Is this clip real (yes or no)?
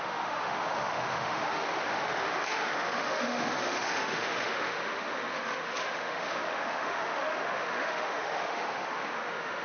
no